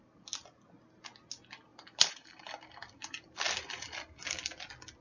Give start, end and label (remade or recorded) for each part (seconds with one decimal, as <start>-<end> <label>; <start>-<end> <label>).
0.0-1.7 recorded; 1.7-2.7 remade; 2.7-5.0 recorded